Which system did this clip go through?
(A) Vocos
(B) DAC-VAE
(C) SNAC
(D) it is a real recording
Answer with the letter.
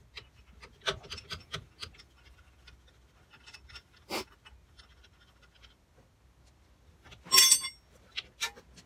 D